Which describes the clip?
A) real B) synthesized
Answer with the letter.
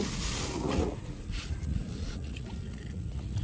B